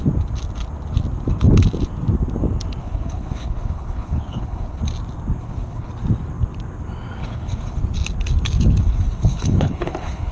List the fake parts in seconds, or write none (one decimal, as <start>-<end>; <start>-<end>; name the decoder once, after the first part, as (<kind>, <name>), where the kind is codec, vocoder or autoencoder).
2.8-4.8 (codec, HILCodec); 5.4-5.9; 7.2-7.8; 8.8-10.3